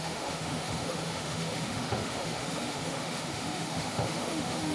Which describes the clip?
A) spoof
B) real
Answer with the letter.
A